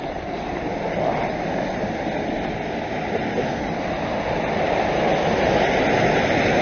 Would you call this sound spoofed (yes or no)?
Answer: no